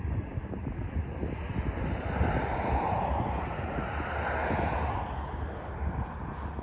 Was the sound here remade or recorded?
recorded